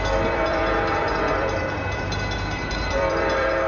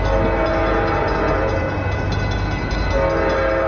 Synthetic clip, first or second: first